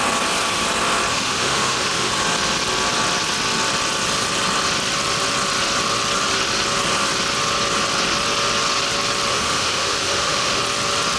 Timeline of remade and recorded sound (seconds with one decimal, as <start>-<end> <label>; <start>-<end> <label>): 0.0-1.1 recorded; 1.1-2.1 remade; 2.1-9.3 recorded; 9.3-10.6 remade; 10.6-11.2 recorded

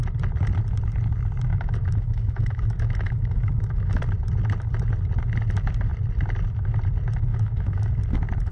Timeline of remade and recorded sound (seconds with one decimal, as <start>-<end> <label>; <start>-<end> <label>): 0.0-1.5 recorded; 1.5-4.0 remade; 4.0-7.3 recorded; 7.3-7.9 remade; 7.9-8.5 recorded

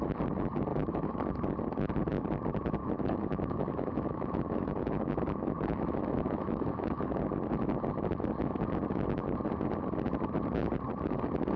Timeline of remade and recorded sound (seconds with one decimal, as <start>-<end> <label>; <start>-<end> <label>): 0.0-0.7 recorded; 0.7-1.2 remade; 1.2-2.8 recorded; 2.8-7.2 remade; 7.2-11.6 recorded

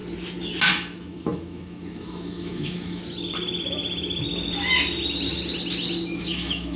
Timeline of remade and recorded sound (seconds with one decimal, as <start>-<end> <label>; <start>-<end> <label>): 0.0-0.7 recorded; 0.7-3.0 remade; 3.0-6.3 recorded; 6.3-6.8 remade

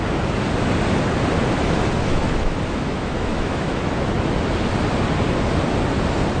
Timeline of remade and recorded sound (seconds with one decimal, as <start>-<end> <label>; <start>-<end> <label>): 0.0-2.1 recorded; 2.1-3.8 remade; 3.8-6.4 recorded

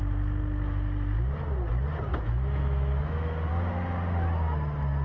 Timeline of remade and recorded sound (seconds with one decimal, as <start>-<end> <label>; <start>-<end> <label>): 0.0-2.1 recorded; 2.1-3.5 remade; 3.5-5.0 recorded

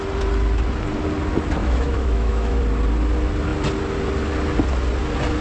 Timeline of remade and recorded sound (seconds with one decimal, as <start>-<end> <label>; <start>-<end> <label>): 0.0-1.6 recorded; 1.6-2.6 remade; 2.6-5.4 recorded